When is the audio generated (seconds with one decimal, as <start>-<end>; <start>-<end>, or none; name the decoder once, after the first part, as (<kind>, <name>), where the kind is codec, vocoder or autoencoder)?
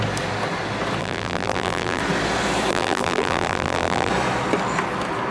1.0-2.0 (vocoder, BigVGAN v2); 2.7-4.1